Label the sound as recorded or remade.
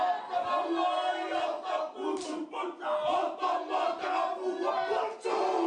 recorded